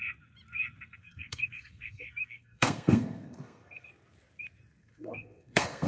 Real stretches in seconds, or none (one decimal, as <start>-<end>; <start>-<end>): 0.0-1.0; 3.9-4.8